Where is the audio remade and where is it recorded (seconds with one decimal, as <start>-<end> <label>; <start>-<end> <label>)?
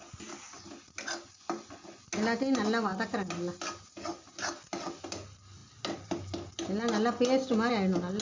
0.0-8.2 recorded